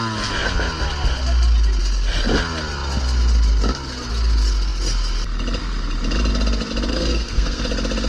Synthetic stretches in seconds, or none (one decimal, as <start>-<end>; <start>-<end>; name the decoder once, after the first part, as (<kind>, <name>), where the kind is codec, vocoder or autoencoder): 6.9-7.6 (codec, SNAC)